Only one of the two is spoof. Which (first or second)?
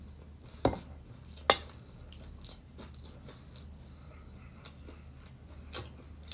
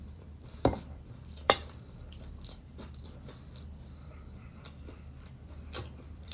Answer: second